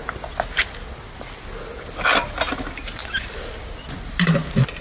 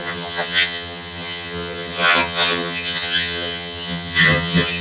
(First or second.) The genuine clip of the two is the first